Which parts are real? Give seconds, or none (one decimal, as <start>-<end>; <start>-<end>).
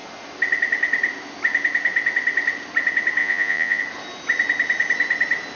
0.0-3.2; 3.8-5.6